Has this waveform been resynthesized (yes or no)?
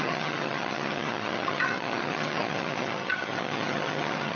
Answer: yes